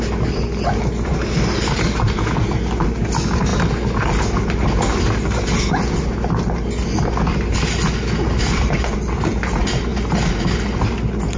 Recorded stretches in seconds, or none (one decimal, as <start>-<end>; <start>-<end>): 0.0-11.4